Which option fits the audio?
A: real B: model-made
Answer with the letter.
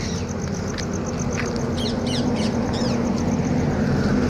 A